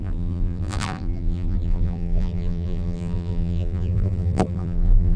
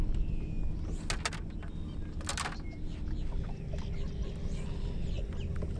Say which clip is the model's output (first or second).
first